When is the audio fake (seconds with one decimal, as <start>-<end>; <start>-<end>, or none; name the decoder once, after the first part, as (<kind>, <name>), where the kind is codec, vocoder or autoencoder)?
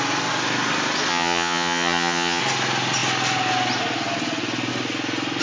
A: 1.1-2.4 (vocoder, HiFi-GAN)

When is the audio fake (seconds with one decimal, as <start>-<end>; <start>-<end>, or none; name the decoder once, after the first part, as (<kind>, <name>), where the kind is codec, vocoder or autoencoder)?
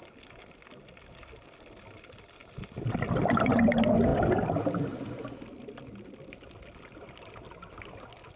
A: none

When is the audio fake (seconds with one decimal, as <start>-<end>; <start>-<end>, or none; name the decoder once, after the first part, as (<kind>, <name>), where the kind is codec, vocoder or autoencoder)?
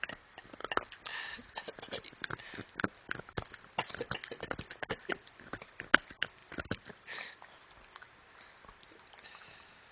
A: none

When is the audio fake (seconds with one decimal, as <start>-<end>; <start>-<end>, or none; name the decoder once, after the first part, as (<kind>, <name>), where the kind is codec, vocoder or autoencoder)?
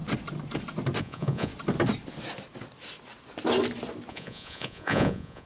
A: 1.0-1.5 (vocoder, Vocos); 4.1-5.5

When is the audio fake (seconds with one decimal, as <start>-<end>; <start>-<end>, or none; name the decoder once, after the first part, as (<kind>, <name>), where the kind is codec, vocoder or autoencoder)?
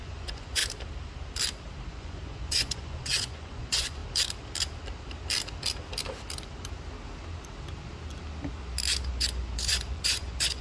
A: 0.0-0.6 (vocoder, Vocos); 1.9-4.0; 9.1-10.6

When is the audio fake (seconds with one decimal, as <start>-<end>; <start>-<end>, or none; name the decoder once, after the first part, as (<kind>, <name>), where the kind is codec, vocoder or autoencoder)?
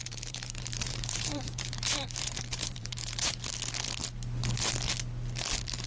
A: 0.0-3.5 (vocoder, BigVGAN v2)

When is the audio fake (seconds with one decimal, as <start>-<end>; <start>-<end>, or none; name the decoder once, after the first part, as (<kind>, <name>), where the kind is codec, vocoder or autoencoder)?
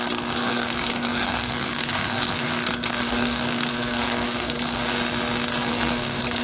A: 0.0-4.8 (codec, SNAC); 5.7-6.4